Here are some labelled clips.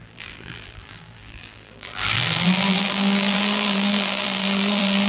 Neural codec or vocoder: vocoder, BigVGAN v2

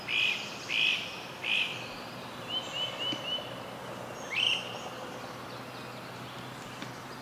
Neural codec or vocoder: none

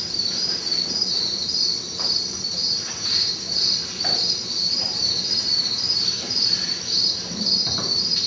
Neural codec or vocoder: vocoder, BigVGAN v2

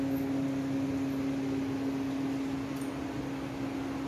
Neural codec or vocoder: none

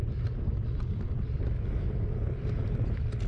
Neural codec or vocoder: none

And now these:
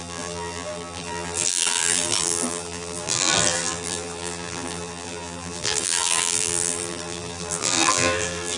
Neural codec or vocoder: vocoder, BigVGAN v2